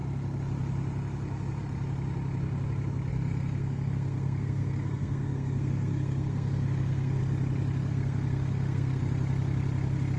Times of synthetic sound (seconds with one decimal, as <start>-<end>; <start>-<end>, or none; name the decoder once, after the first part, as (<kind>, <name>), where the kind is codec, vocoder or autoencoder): 3.1-7.2 (codec, SNAC); 7.9-9.0